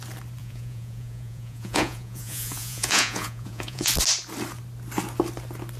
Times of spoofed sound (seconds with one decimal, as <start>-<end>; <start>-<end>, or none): 0.4-3.9